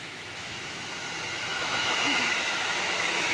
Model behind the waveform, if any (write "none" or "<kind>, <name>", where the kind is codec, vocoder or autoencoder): autoencoder, DAC-VAE